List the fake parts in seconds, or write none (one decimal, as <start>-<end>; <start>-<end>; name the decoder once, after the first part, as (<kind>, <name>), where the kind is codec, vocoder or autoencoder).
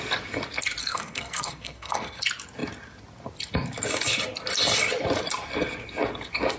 0.8-2.2 (codec, SNAC)